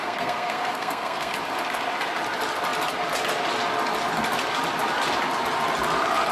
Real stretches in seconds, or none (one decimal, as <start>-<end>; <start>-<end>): 1.3-6.3